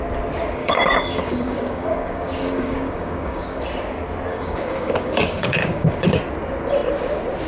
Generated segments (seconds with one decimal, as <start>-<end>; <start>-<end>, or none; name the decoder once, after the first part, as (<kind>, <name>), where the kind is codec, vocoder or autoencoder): 0.6-3.6 (codec, DAC); 4.3-6.2